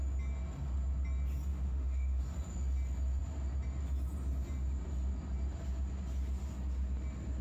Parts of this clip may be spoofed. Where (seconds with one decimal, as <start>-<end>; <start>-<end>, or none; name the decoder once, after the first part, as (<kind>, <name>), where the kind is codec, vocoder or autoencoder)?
1.5-2.2 (autoencoder, DAC-VAE)